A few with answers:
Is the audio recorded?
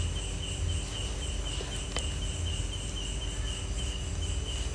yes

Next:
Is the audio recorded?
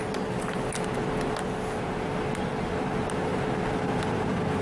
yes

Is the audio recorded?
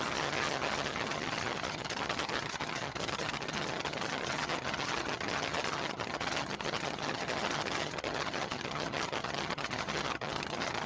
no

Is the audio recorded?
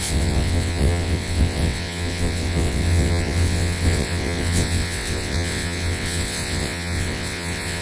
no